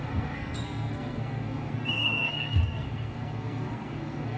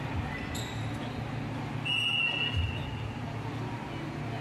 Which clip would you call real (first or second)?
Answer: second